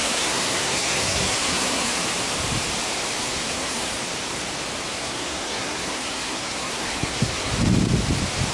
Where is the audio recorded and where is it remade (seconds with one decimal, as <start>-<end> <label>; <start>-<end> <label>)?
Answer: 0.0-2.0 remade; 2.0-3.2 recorded; 3.2-3.9 remade; 3.9-4.9 recorded; 4.9-7.5 remade; 7.5-8.5 recorded